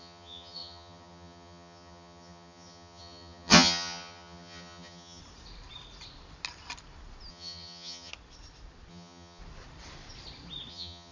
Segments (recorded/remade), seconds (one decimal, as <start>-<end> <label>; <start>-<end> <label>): 0.0-5.2 remade; 5.2-7.3 recorded; 7.3-8.1 remade; 8.1-8.9 recorded; 8.9-9.4 remade; 9.4-10.7 recorded; 10.7-11.1 remade

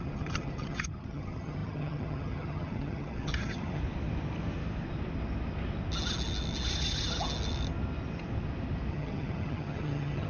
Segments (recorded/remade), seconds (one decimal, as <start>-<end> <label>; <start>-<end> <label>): 0.0-3.8 remade; 3.8-8.9 recorded; 8.9-10.3 remade